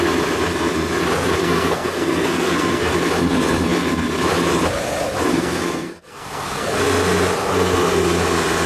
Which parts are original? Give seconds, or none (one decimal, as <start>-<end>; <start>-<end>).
0.0-1.4; 2.9-5.3; 6.8-8.7